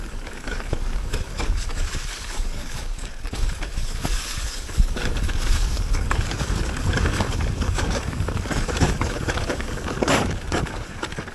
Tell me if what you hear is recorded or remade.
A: remade